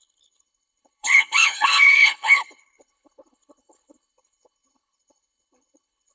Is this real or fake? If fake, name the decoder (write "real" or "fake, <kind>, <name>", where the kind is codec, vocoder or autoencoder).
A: fake, codec, HILCodec